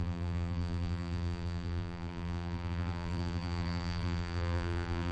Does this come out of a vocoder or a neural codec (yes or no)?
yes